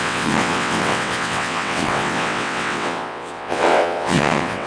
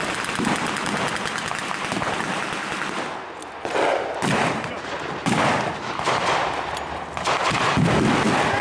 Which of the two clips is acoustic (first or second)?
second